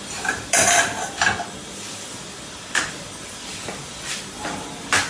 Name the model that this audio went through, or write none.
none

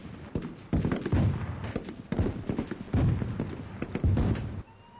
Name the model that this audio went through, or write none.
vocoder, BigVGAN v2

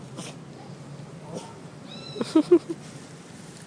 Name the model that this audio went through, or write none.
none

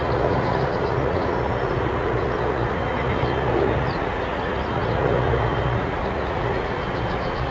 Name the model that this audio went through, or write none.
vocoder, Vocos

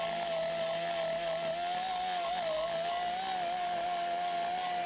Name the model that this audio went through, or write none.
none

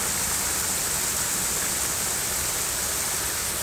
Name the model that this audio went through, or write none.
none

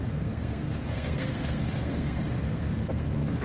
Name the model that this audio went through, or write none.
codec, SNAC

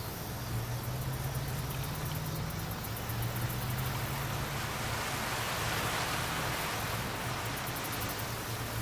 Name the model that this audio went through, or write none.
none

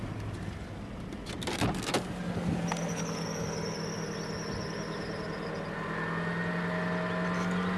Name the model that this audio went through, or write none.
none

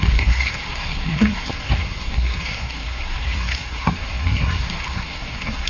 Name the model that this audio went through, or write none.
codec, SNAC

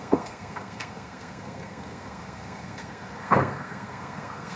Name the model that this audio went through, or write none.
codec, SNAC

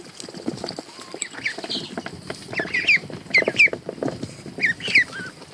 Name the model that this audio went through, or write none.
none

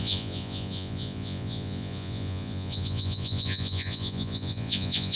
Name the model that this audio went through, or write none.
vocoder, Vocos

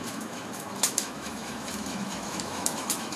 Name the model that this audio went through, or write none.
autoencoder, DAC-VAE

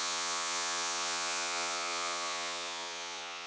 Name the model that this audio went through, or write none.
vocoder, Vocos